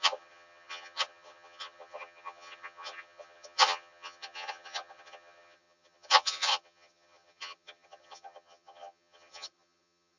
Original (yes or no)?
no